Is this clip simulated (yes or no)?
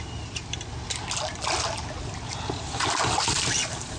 no